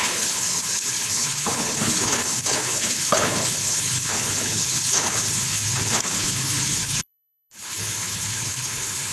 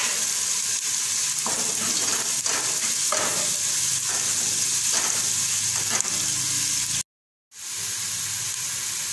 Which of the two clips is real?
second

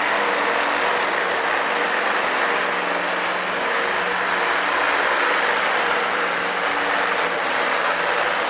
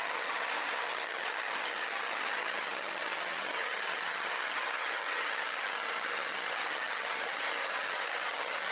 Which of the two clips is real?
first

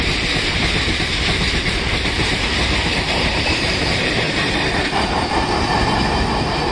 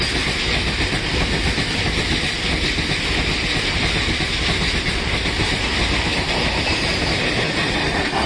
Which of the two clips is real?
second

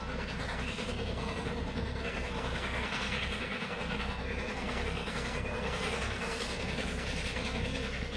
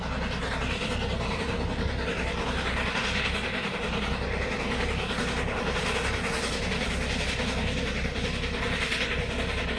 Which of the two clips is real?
second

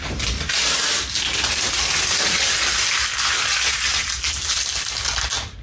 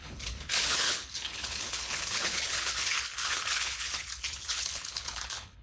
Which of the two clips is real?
first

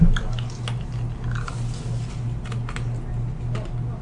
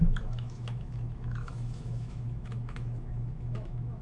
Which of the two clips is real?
first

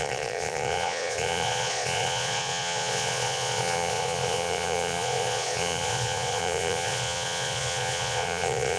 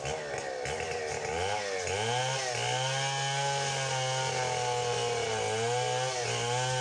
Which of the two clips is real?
second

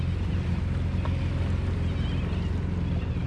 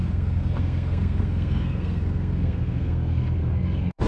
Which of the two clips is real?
first